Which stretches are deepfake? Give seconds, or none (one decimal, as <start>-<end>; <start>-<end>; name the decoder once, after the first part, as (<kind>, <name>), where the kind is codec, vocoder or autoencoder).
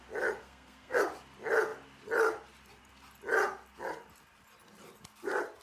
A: 0.4-1.0 (codec, SNAC)